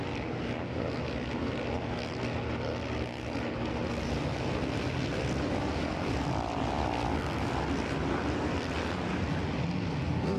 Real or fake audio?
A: real